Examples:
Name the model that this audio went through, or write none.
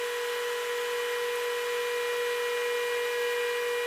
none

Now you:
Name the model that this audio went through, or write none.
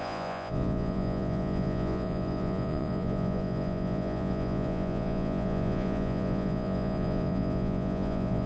vocoder, Vocos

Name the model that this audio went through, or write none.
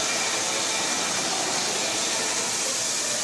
none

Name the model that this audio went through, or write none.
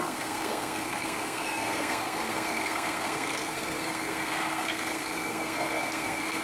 codec, SNAC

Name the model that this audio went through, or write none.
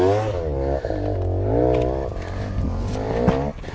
none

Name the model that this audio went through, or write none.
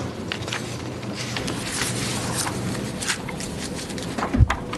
none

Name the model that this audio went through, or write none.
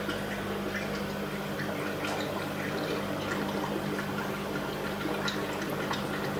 none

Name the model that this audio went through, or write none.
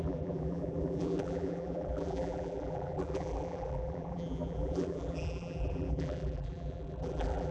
vocoder, BigVGAN v2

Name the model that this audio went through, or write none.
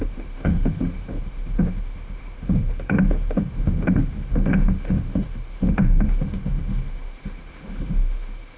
autoencoder, DAC-VAE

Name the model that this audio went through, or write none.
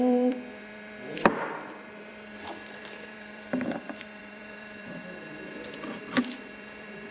vocoder, BigVGAN v2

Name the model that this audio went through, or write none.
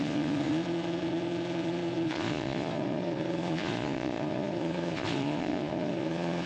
vocoder, Vocos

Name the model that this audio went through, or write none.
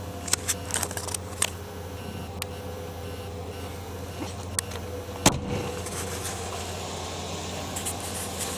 none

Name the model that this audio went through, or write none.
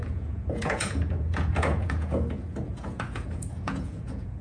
vocoder, Vocos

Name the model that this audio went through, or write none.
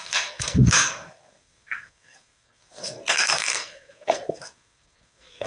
codec, SNAC